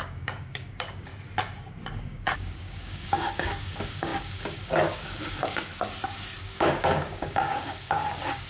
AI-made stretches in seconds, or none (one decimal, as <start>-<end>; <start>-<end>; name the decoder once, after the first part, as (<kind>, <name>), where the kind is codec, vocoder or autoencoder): 0.0-1.1 (codec, DAC); 2.0-5.7; 6.4-8.5